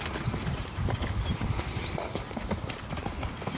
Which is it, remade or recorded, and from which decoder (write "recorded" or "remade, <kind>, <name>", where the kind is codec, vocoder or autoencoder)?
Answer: recorded